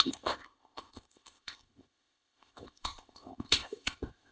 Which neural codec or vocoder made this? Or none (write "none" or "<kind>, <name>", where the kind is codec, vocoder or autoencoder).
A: codec, ZipCodec